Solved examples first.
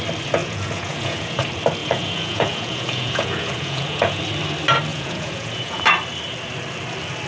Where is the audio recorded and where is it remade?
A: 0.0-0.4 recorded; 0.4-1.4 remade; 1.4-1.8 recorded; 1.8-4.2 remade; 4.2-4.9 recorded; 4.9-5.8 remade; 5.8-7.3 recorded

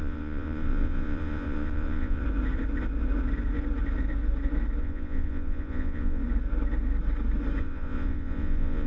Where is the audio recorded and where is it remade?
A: 0.0-2.2 remade; 2.2-4.8 recorded; 4.8-6.2 remade; 6.2-7.6 recorded; 7.6-8.9 remade

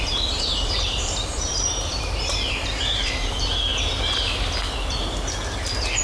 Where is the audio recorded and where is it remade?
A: 0.0-3.7 remade; 3.7-6.0 recorded